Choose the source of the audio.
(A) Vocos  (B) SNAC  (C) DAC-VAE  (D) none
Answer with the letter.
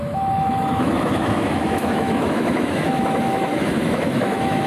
C